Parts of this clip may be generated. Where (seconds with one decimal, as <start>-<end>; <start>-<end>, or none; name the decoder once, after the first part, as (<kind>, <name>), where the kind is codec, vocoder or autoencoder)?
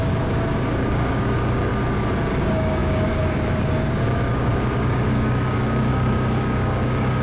0.0-1.7 (codec, DAC); 2.4-7.2